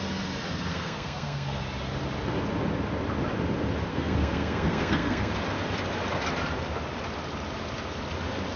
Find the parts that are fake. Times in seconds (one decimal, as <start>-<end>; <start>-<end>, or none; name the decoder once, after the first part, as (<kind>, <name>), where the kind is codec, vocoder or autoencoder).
0.7-1.6 (codec, SNAC); 3.9-5.3